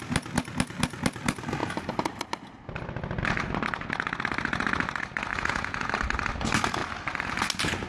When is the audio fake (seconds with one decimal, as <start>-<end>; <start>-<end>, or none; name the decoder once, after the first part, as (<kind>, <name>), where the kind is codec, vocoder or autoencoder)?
5.3-5.9 (vocoder, Vocos)